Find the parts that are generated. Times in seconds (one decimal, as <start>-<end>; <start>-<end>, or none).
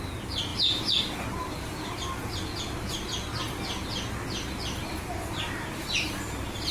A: none